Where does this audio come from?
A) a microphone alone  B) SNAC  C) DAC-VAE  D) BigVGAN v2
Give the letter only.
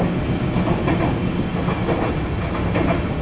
A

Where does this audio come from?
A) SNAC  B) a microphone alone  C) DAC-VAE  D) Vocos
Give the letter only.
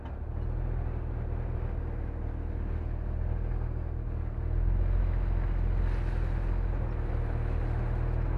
B